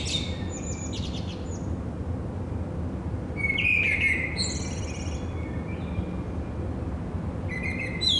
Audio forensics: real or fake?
real